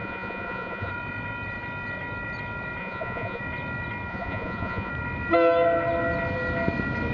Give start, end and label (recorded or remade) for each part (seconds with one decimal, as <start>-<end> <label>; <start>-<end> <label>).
0.0-0.9 remade; 0.9-2.8 recorded; 2.8-3.4 remade; 3.4-4.1 recorded; 4.1-4.9 remade; 4.9-7.1 recorded